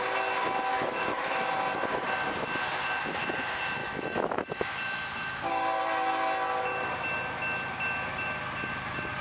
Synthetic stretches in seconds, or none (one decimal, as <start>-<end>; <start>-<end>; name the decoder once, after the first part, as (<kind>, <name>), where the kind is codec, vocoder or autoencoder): 0.7-1.5 (autoencoder, DAC-VAE); 3.8-5.5